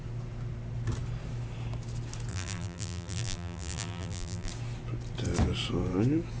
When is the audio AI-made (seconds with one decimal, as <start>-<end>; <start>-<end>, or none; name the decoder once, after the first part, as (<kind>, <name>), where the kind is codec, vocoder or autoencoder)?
2.3-4.5 (vocoder, BigVGAN v2)